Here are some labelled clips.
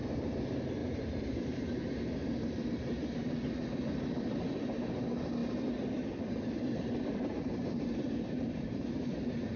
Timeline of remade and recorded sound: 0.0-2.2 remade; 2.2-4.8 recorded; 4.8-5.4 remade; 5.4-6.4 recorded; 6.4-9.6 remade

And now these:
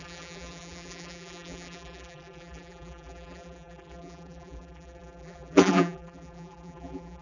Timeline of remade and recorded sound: 0.0-7.2 remade

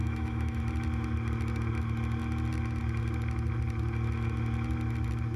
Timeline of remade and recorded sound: 0.0-0.6 remade; 0.6-5.4 recorded